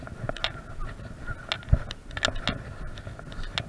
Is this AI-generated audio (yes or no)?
no